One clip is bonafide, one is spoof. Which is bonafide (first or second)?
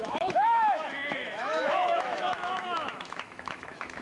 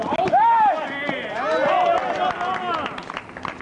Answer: second